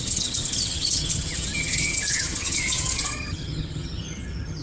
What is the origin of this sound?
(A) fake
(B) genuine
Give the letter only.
A